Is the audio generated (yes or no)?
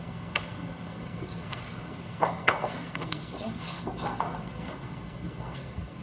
yes